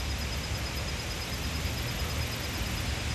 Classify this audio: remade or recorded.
recorded